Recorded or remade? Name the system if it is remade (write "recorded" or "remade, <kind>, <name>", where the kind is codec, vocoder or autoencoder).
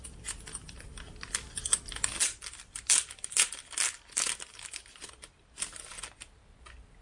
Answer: recorded